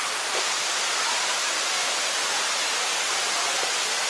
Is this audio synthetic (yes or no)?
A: no